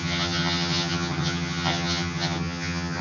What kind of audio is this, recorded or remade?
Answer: remade